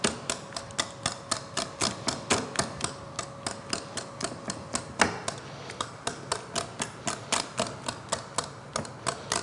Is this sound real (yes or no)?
yes